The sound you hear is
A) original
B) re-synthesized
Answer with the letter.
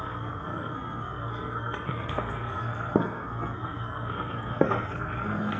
B